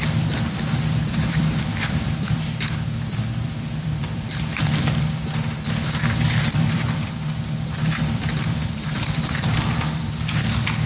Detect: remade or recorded remade